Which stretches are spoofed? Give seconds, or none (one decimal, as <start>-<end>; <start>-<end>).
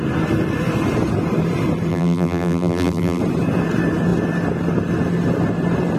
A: 1.9-3.2